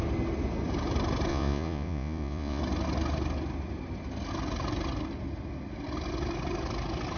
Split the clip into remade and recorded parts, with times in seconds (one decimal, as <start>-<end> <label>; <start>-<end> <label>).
0.0-1.3 recorded; 1.3-2.6 remade; 2.6-7.2 recorded